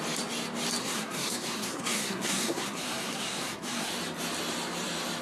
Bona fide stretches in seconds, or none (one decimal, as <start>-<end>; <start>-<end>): 0.0-0.8; 3.9-5.2